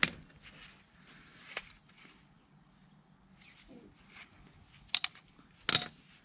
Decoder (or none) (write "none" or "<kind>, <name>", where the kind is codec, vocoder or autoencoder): none